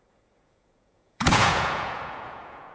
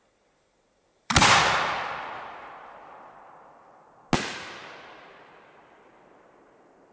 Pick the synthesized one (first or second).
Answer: first